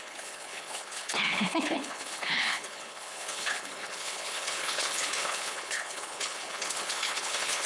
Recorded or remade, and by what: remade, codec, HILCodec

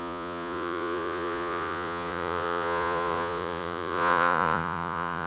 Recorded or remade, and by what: remade, vocoder, Vocos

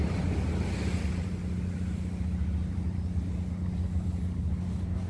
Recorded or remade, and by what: recorded